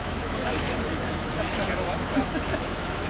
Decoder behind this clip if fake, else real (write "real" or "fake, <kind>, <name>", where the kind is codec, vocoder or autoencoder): fake, autoencoder, DAC-VAE